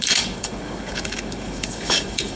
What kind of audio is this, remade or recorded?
remade